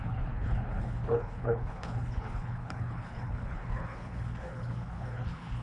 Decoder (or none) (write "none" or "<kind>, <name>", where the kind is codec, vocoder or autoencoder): codec, HILCodec